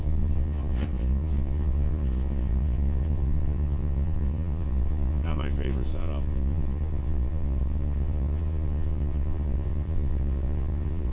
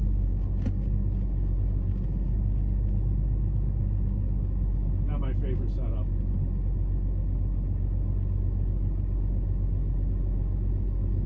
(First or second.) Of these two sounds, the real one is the second